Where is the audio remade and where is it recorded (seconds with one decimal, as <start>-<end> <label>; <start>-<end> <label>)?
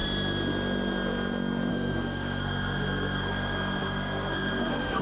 0.0-1.7 recorded; 1.7-5.0 remade